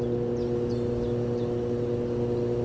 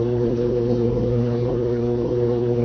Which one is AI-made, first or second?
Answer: second